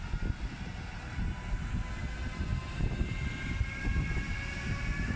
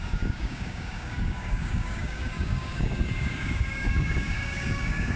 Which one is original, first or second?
first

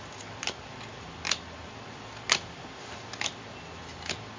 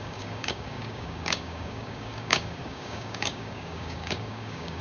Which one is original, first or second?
first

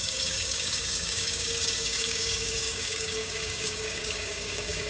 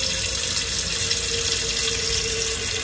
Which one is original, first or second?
second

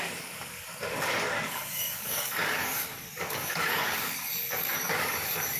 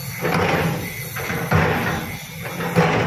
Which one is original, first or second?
second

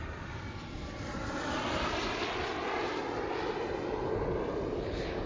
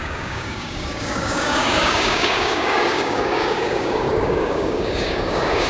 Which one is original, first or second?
first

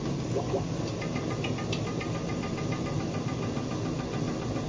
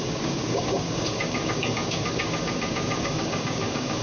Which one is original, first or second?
first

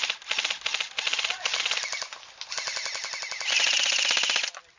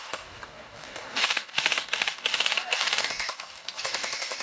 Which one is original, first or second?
first